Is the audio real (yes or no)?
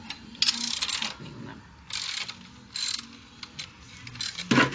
yes